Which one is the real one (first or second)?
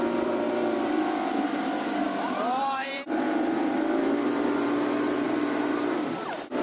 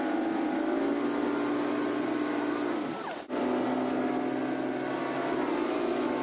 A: second